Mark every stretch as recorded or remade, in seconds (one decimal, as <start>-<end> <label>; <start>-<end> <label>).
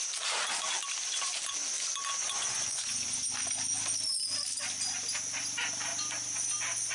0.0-2.2 recorded; 2.2-3.5 remade; 3.5-6.9 recorded